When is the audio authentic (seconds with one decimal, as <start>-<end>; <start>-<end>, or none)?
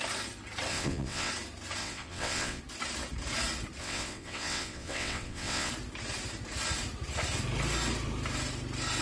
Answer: 0.0-0.7; 1.3-1.8; 2.6-3.8; 5.7-9.0